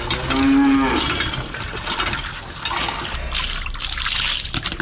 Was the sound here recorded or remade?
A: recorded